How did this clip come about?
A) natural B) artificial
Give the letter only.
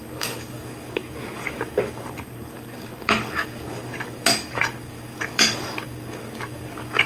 B